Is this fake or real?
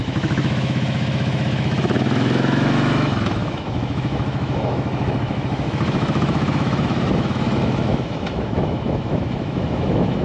fake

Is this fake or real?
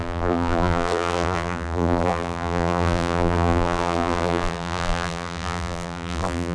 fake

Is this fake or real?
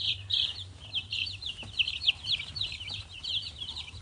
fake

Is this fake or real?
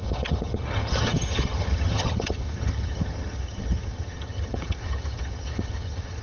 fake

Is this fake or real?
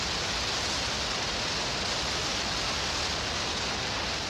real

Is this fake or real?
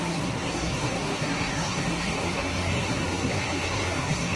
fake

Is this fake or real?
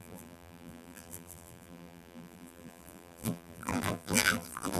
fake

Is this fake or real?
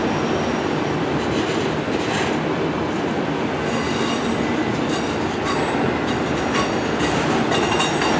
real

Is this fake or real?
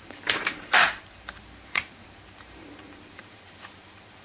fake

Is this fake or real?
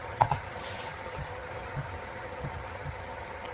fake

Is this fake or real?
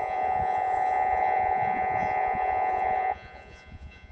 fake